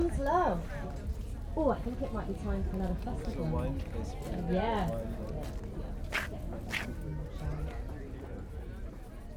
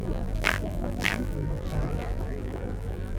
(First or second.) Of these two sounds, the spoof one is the second